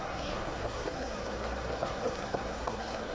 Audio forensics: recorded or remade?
remade